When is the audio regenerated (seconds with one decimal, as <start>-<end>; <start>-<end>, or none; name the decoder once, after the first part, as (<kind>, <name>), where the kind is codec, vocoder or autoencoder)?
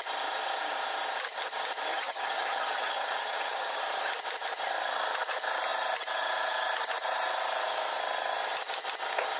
1.9-3.8 (vocoder, HiFi-GAN)